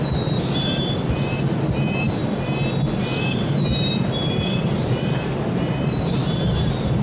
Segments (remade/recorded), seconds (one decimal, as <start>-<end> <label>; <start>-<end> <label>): 0.0-2.2 remade; 2.2-3.2 recorded; 3.2-7.0 remade